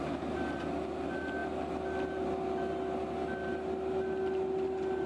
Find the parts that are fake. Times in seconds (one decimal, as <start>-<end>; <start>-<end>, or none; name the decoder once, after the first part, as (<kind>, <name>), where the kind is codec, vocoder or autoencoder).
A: none